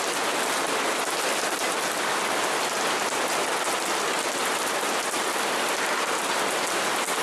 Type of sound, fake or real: real